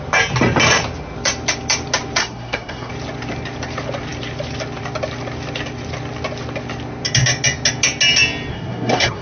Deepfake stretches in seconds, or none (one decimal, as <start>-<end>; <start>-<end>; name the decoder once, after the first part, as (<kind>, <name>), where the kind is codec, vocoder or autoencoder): 2.2-2.9 (codec, SNAC); 8.5-9.2